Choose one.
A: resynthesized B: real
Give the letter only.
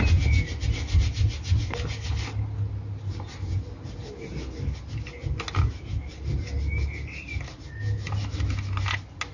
B